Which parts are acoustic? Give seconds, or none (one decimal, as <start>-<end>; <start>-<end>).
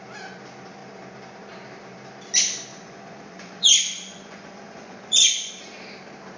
0.0-2.7; 5.5-6.4